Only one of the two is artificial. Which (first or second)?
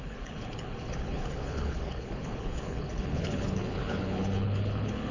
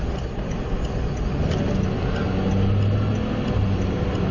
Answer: first